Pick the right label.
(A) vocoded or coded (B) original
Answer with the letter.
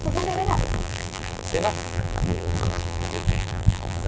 A